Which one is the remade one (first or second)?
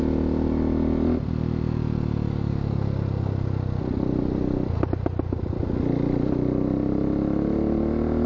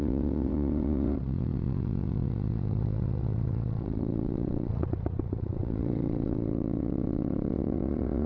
second